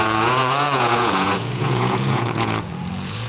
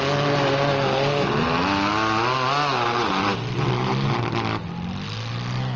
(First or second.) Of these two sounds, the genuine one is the second